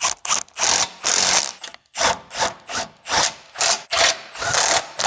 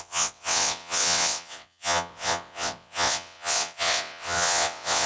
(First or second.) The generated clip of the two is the second